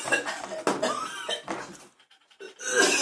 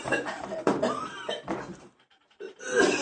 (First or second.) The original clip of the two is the first